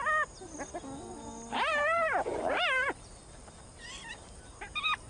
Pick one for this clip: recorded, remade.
recorded